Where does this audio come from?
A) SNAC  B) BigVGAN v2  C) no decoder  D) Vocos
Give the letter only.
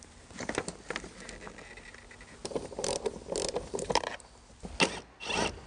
C